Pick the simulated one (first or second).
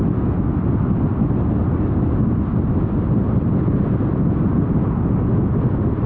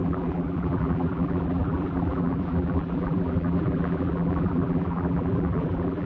second